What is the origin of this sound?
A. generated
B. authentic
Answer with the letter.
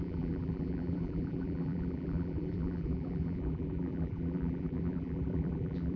A